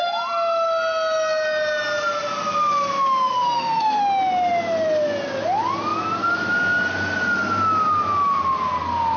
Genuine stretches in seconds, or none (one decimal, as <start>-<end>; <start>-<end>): 0.0-3.3; 4.0-9.2